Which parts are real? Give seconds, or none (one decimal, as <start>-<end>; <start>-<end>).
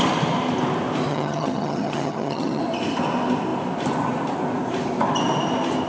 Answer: 0.0-1.1; 2.6-5.9